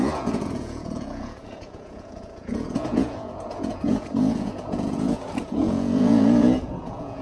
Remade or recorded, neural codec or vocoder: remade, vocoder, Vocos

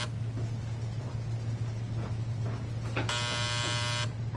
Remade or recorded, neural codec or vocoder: recorded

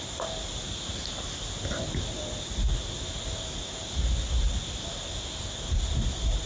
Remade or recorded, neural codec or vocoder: recorded